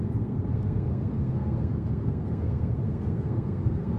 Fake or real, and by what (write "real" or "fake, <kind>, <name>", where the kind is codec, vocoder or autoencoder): fake, codec, SNAC